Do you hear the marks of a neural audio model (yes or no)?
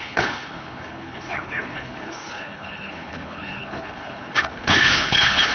yes